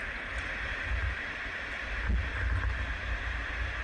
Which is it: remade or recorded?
recorded